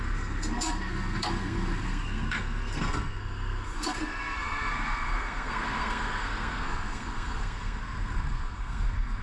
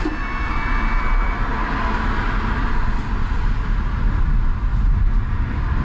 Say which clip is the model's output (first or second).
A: first